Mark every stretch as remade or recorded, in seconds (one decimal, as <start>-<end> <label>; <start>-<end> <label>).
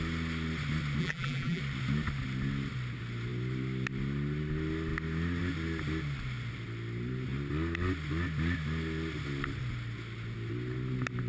0.0-1.0 recorded; 1.0-1.6 remade; 1.6-11.3 recorded